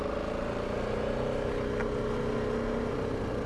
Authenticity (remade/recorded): recorded